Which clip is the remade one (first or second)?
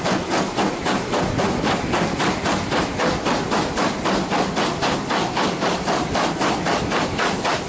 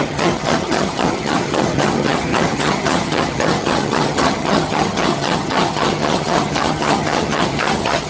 second